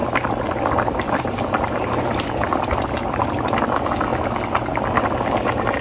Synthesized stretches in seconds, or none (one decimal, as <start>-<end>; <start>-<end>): 0.0-3.5